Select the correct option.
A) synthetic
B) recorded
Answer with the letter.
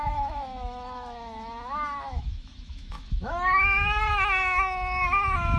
A